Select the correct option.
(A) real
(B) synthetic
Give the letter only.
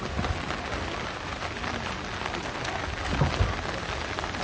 A